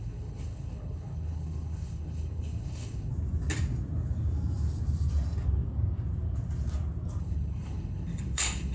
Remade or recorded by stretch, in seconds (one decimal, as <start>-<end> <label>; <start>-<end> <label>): 0.0-3.1 remade; 3.1-7.2 recorded; 7.2-8.7 remade